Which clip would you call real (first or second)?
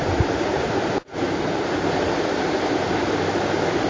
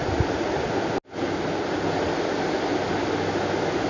second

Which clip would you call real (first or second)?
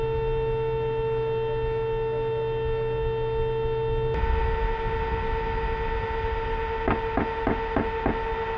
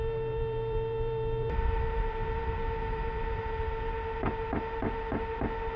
first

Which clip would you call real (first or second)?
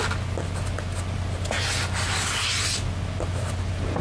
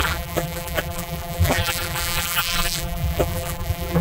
first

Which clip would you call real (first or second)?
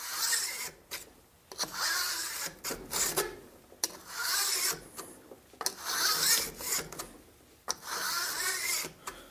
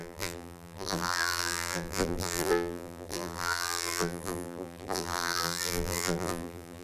first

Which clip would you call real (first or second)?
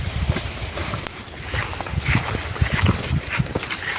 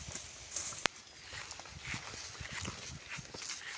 second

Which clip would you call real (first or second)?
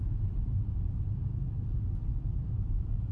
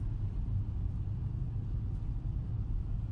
second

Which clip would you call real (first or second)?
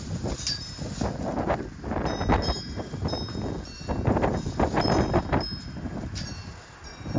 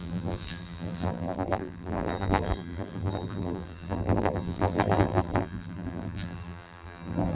first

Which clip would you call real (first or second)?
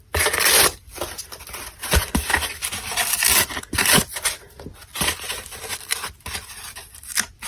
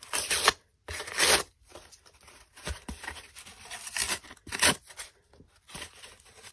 first